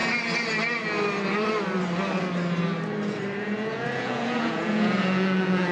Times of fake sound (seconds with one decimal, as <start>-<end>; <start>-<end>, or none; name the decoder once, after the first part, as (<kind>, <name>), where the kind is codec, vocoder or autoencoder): 3.4-5.7 (vocoder, Vocos)